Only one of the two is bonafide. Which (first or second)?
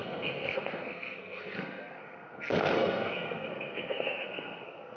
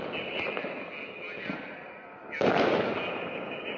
second